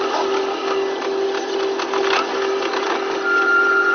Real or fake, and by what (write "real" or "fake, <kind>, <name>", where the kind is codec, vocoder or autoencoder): real